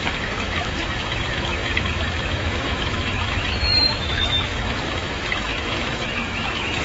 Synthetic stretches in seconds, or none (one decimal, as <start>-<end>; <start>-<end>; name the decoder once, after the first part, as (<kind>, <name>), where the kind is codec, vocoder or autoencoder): 0.0-6.8 (autoencoder, DAC-VAE)